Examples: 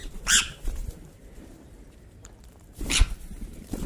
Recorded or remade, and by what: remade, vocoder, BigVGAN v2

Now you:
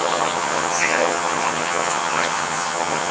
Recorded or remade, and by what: remade, vocoder, HiFi-GAN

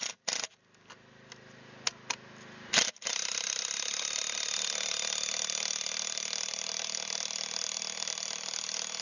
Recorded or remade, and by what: recorded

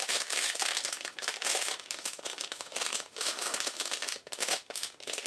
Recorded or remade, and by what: remade, autoencoder, DAC-VAE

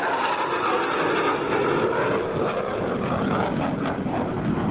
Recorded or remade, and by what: recorded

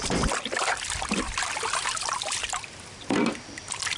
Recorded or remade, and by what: remade, vocoder, BigVGAN v2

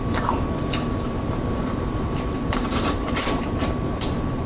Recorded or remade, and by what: remade, vocoder, BigVGAN v2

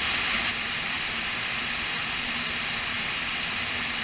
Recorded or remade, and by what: recorded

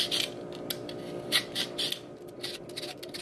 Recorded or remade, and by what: recorded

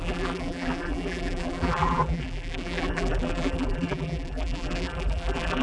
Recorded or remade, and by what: remade, vocoder, BigVGAN v2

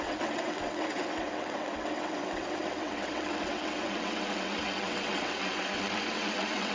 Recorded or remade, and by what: remade, vocoder, WaveNeXt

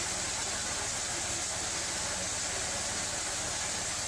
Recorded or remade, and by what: recorded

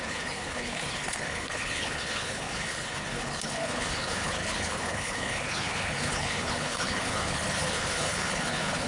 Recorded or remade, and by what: remade, codec, HILCodec